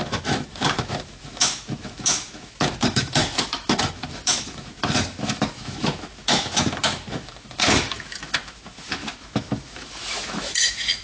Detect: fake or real fake